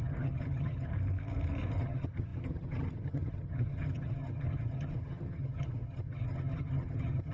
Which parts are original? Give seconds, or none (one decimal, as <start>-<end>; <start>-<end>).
0.9-1.8